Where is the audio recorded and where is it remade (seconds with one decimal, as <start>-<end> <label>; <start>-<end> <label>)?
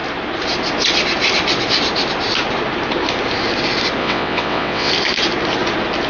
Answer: 0.0-4.0 recorded; 4.0-4.9 remade; 4.9-6.1 recorded